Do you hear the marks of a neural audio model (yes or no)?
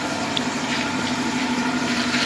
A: yes